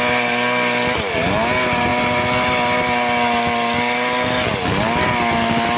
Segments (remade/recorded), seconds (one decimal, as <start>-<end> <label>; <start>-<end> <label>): 0.0-5.8 recorded